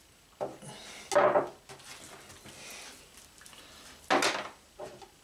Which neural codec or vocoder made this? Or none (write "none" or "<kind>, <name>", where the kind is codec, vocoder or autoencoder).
none